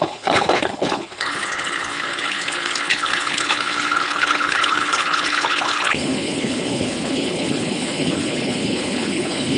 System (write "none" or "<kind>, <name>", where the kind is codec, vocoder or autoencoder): codec, HILCodec